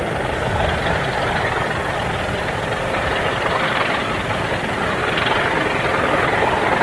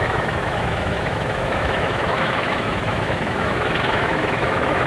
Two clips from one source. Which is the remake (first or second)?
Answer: second